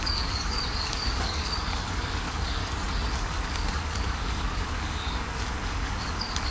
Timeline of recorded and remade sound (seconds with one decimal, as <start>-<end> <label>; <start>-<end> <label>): 0.0-2.6 remade; 2.6-3.1 recorded; 3.1-6.5 remade